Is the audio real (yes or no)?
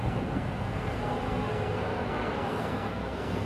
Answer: no